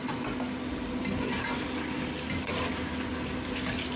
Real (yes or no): yes